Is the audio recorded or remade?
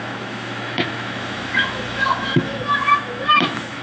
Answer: remade